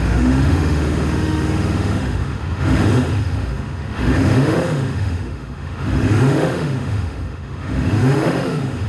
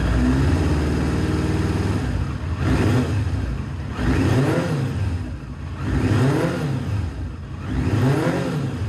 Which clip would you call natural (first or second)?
second